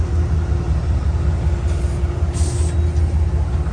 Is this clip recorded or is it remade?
recorded